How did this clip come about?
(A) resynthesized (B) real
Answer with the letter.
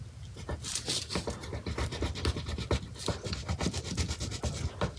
B